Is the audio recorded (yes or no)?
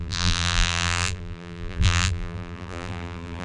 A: no